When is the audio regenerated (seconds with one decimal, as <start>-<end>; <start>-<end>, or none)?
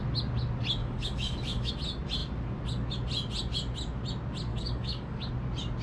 0.8-1.7; 4.5-5.3